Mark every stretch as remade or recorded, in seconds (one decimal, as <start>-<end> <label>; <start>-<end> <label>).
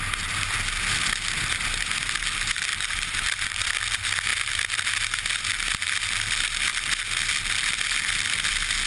0.0-2.7 recorded; 2.7-3.7 remade; 3.7-8.9 recorded